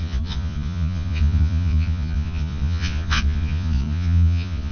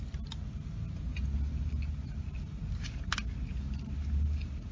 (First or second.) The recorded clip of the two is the second